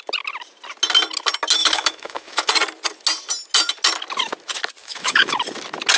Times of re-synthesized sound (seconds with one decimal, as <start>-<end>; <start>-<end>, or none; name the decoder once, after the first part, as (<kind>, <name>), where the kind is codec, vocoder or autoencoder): 1.6-2.5 (autoencoder, DAC-VAE); 4.8-5.4